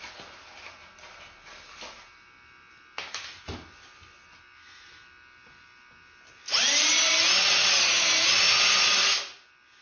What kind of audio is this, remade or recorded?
recorded